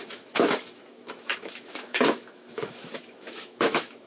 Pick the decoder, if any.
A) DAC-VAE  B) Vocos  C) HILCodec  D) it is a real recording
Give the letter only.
A